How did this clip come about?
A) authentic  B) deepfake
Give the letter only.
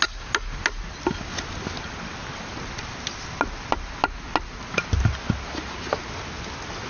A